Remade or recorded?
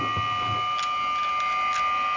recorded